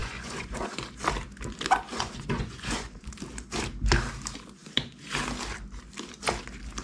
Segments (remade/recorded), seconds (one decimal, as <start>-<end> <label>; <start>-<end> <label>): 0.0-0.8 remade; 0.8-1.9 recorded; 1.9-3.1 remade; 3.1-6.8 recorded